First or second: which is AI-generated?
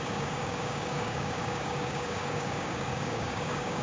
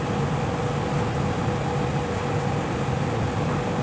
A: first